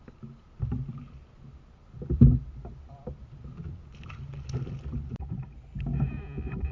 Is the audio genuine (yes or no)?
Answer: yes